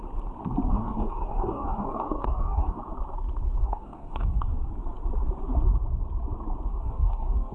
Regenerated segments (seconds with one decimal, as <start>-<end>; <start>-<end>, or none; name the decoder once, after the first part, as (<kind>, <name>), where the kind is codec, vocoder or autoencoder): 0.7-2.8 (codec, DAC); 3.6-4.7; 6.7-7.5